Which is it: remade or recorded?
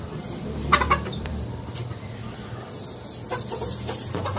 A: remade